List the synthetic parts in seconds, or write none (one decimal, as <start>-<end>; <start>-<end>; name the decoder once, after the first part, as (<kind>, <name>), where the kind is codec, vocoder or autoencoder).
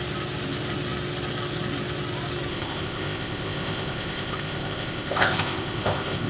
2.5-6.3 (codec, ZipCodec)